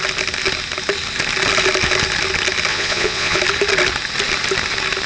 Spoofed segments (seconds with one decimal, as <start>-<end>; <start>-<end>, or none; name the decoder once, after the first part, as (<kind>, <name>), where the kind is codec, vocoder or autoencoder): 2.7-3.4 (vocoder, Vocos)